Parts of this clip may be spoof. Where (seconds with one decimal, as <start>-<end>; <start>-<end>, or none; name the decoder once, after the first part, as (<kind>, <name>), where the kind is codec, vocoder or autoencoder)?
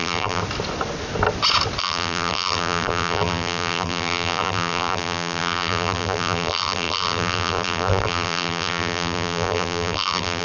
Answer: 0.0-0.4 (vocoder, BigVGAN v2); 1.8-10.4